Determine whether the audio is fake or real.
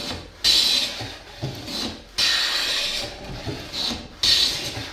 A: real